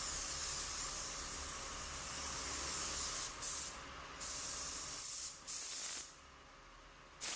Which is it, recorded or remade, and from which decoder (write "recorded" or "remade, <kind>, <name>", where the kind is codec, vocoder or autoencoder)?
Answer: recorded